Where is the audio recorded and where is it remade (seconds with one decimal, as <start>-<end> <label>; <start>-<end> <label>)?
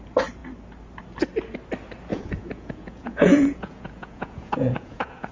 0.0-2.1 recorded; 2.1-5.3 remade